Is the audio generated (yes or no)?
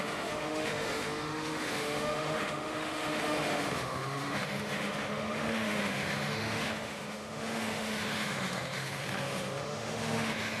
yes